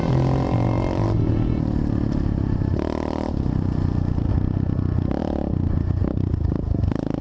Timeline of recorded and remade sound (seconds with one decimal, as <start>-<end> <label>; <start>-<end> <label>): 0.0-7.2 recorded